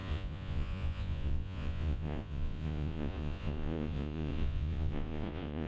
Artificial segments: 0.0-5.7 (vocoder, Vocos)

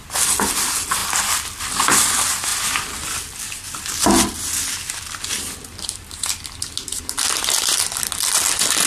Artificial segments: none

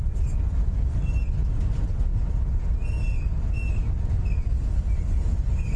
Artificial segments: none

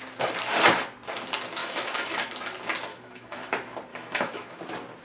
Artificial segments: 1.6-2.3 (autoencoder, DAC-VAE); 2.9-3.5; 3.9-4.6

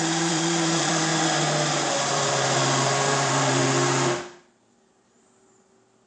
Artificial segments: 0.0-1.1 (vocoder, BigVGAN v2); 1.9-3.6

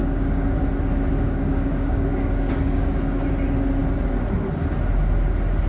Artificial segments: 0.0-0.6 (codec, DAC); 1.1-3.3

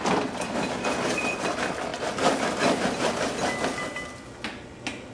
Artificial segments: none